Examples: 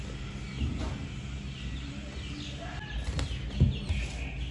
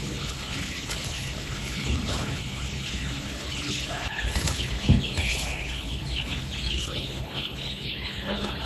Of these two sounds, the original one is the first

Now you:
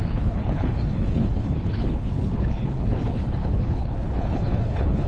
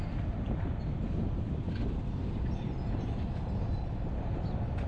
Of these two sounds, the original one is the second